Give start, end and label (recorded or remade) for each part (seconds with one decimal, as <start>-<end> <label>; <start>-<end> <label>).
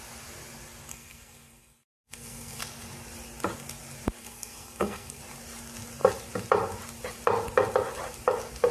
0.0-0.9 recorded; 0.9-2.6 remade; 2.6-4.2 recorded; 4.2-5.2 remade; 5.2-8.7 recorded